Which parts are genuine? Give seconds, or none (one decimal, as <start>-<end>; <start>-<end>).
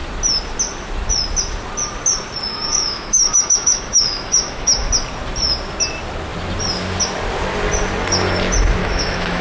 0.0-2.5; 4.9-8.8